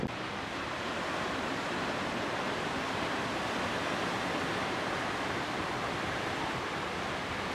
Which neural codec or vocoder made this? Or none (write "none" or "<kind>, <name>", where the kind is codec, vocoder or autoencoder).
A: vocoder, BigVGAN v2